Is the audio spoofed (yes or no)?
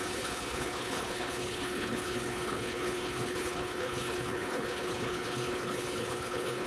yes